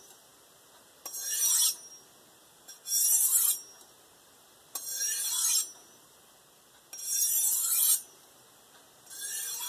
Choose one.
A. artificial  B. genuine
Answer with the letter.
B